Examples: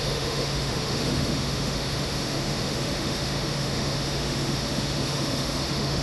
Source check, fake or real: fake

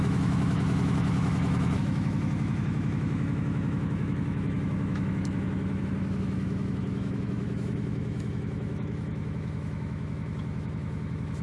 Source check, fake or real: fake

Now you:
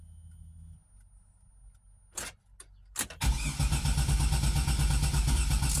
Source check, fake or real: real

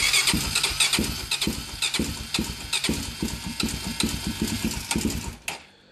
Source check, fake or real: real